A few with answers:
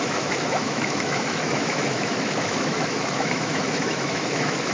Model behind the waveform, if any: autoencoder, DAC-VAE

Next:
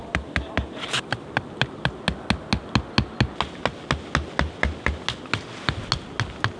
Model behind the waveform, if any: none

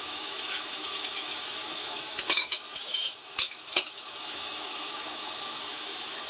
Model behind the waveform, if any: autoencoder, DAC-VAE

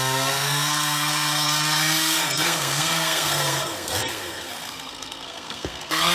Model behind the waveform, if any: codec, SNAC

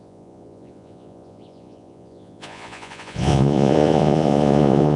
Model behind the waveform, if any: vocoder, Vocos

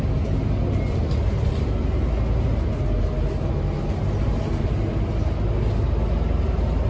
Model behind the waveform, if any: none